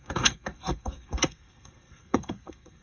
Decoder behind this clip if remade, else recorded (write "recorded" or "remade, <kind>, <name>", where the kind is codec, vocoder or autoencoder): remade, codec, SNAC